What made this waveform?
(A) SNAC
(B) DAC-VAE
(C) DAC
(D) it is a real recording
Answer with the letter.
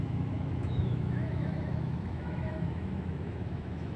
B